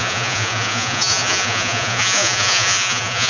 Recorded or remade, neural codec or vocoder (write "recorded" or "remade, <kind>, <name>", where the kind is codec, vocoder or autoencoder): remade, vocoder, Vocos